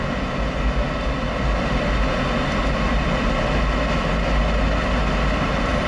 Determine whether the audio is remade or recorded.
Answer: recorded